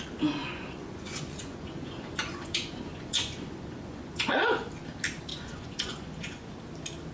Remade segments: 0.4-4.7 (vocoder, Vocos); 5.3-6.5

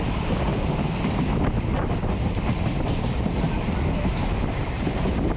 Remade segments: none

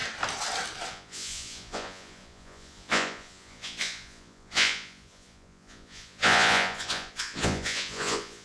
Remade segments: 0.9-8.4 (vocoder, Vocos)

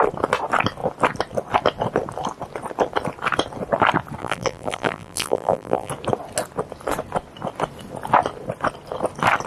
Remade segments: 4.2-5.9 (vocoder, BigVGAN v2)

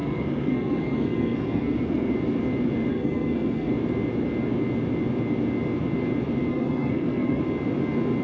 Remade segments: 0.0-2.1 (codec, SNAC); 2.9-3.7; 6.5-7.4